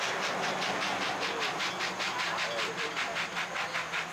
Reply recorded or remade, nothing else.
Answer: recorded